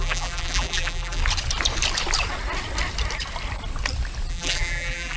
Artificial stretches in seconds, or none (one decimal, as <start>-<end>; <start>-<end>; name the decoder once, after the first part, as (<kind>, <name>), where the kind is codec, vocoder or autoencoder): 0.0-1.2 (vocoder, BigVGAN v2); 4.3-5.2